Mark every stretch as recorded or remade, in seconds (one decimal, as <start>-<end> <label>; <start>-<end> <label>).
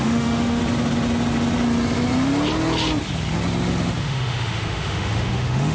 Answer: 0.0-0.6 remade; 0.6-4.0 recorded; 4.0-5.7 remade